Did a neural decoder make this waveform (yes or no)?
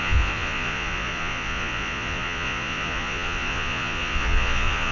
yes